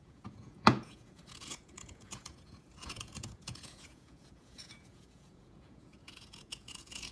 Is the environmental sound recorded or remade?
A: remade